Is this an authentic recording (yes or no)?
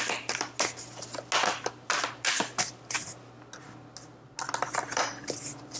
yes